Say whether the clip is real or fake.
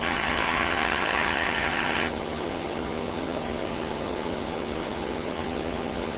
fake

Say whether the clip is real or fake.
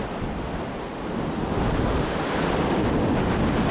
real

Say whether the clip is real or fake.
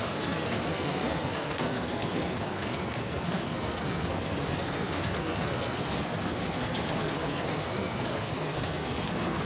fake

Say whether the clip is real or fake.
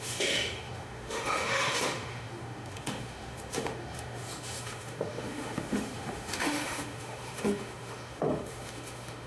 fake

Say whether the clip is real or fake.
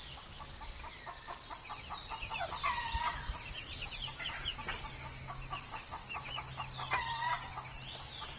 real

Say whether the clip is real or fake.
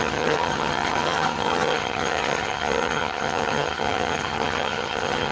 fake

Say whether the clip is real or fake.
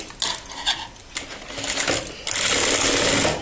real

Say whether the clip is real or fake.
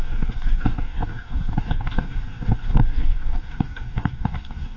fake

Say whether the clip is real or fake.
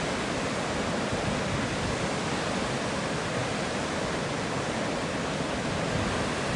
real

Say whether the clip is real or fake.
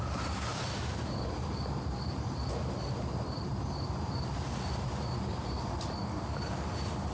real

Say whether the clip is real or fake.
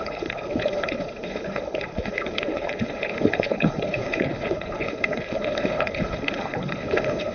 fake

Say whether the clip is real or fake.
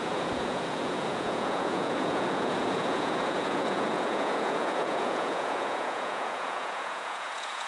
fake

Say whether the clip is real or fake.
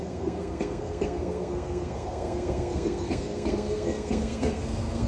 fake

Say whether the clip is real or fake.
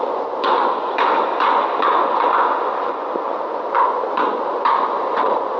fake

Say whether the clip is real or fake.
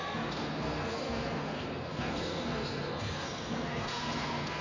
fake